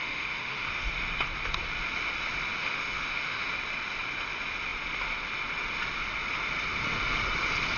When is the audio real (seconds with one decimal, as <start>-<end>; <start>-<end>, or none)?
0.9-2.6; 3.5-7.8